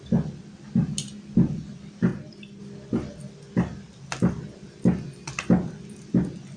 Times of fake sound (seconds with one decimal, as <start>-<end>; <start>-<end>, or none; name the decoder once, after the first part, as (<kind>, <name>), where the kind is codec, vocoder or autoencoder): 2.1-2.6 (vocoder, BigVGAN v2)